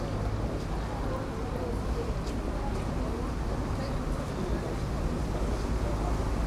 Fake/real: real